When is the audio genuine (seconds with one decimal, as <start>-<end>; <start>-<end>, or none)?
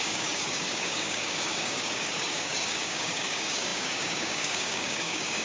none